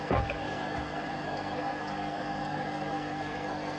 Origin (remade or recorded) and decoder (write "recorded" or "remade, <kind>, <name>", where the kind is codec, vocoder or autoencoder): remade, codec, SNAC